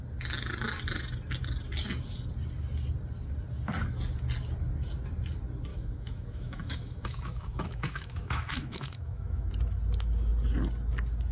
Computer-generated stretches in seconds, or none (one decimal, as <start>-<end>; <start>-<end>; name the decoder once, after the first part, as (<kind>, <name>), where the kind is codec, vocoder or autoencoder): 5.7-9.5 (autoencoder, DAC-VAE)